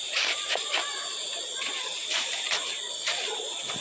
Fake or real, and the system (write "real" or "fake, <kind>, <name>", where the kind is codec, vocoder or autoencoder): fake, vocoder, BigVGAN v2